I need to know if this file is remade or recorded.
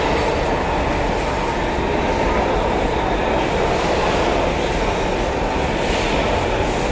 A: recorded